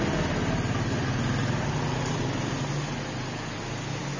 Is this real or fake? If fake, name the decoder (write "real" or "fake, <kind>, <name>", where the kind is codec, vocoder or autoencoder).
real